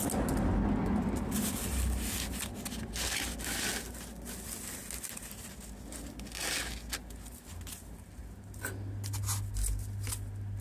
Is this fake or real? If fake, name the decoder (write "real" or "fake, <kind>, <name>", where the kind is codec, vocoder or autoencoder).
real